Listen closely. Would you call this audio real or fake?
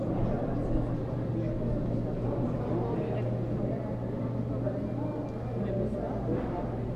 real